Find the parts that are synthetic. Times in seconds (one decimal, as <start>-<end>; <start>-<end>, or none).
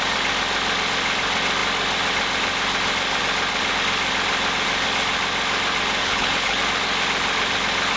6.0-6.6